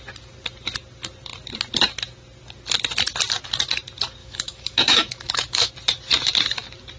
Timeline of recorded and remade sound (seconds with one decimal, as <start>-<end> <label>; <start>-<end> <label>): 0.0-4.2 recorded; 4.2-5.7 remade; 5.7-7.0 recorded